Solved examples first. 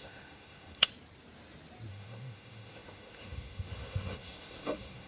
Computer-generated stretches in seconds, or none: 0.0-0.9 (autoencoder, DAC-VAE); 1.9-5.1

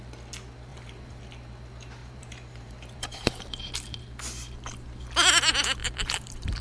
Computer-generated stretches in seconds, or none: 0.7-1.2 (vocoder, BigVGAN v2); 2.0-4.0; 5.8-6.6